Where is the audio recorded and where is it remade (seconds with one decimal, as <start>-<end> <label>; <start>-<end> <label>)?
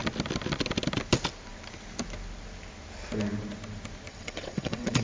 0.0-4.1 recorded; 4.1-5.0 remade